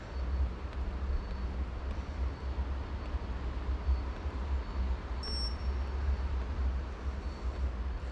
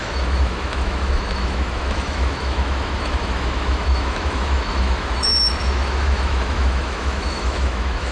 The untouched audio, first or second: first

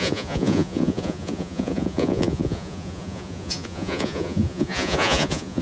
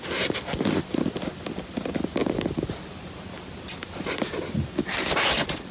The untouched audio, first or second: second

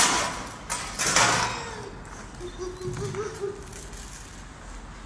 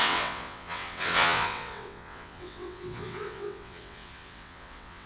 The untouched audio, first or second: first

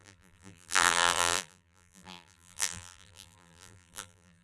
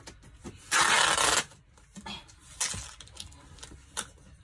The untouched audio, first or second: second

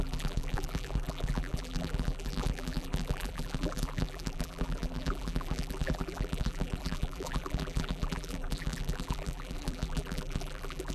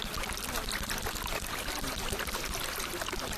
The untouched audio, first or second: second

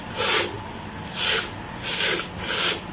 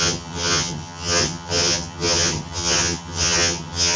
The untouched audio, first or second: first